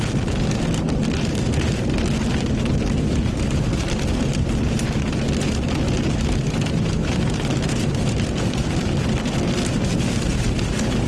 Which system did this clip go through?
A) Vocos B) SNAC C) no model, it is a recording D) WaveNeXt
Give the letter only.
C